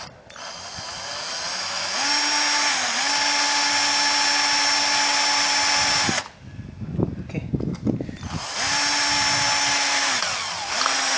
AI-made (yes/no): no